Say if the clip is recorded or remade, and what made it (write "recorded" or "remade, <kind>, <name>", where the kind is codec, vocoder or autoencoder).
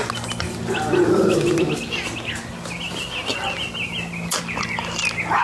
recorded